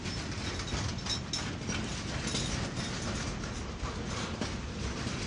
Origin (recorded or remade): recorded